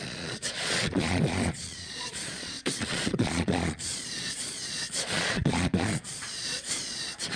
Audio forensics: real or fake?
fake